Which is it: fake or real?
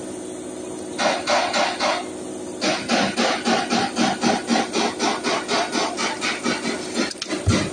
real